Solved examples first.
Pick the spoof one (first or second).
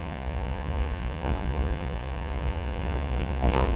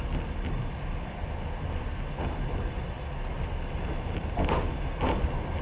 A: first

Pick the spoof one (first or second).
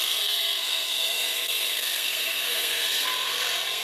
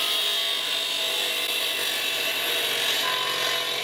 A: first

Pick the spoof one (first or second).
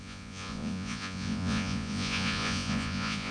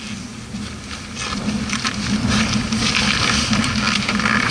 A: first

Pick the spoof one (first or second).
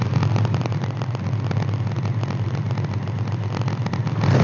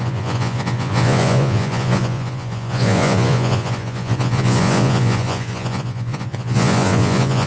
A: second